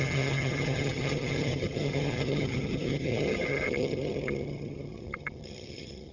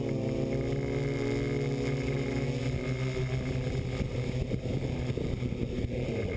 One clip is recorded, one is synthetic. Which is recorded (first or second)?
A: second